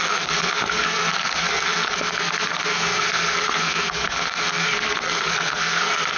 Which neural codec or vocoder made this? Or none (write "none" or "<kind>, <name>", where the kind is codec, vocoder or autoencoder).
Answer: codec, SNAC